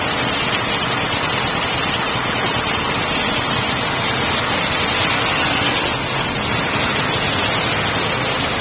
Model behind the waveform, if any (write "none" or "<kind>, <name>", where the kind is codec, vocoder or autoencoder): none